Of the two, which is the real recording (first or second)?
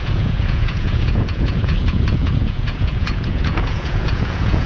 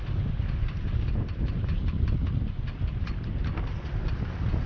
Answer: second